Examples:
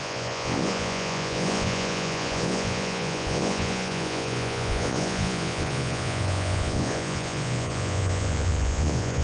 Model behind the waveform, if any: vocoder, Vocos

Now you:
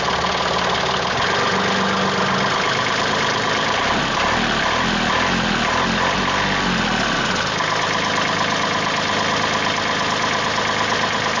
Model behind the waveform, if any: none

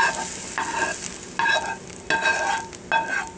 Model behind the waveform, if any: none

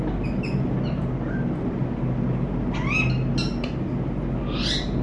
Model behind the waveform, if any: none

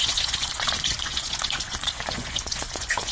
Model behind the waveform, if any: vocoder, Vocos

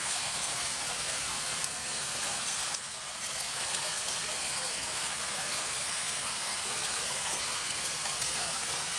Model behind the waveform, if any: codec, SNAC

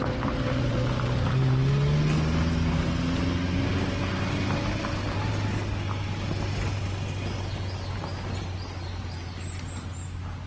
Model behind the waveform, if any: none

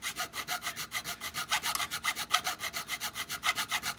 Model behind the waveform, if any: none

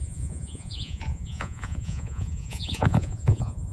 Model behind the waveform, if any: vocoder, Vocos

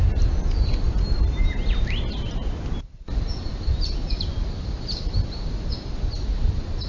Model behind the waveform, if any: none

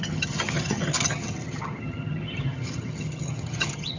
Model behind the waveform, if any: vocoder, HiFi-GAN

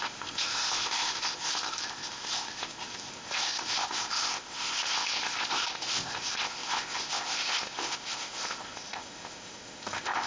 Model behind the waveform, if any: codec, ZipCodec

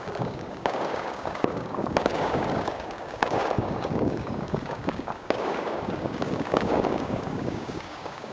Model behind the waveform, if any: codec, DAC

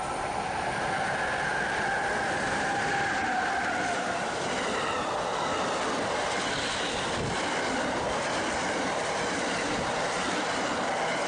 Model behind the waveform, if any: vocoder, BigVGAN v2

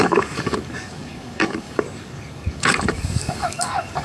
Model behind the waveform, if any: codec, DAC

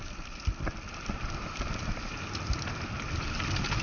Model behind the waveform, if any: none